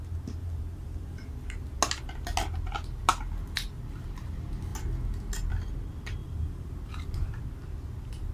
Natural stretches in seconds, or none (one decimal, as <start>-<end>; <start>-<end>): 0.0-0.4; 1.3-6.2; 6.7-8.3